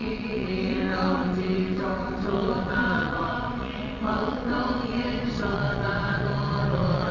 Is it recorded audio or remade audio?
remade